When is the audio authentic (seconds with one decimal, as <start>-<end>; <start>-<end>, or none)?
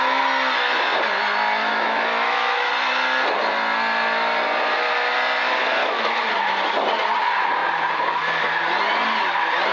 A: 0.0-1.6; 2.7-5.8; 6.3-9.7